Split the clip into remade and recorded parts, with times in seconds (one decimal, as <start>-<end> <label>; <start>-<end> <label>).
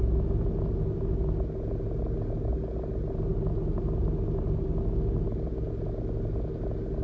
0.0-7.0 recorded